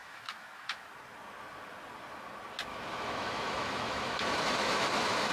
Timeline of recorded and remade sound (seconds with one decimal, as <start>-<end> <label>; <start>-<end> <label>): 0.0-0.8 remade; 0.8-2.7 recorded; 2.7-5.3 remade